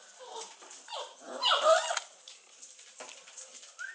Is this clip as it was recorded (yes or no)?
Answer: yes